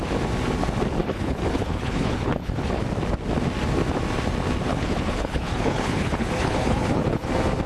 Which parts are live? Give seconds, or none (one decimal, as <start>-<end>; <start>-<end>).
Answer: 0.0-1.0; 2.8-4.7; 7.3-7.7